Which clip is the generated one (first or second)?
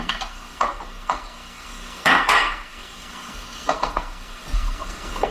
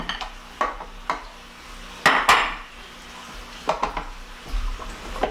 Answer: first